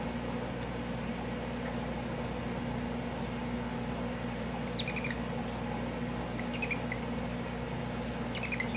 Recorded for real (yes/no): yes